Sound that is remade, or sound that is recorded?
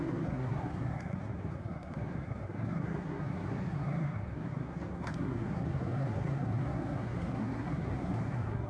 remade